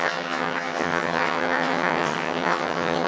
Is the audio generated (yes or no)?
yes